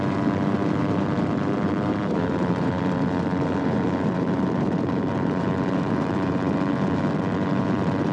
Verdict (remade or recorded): remade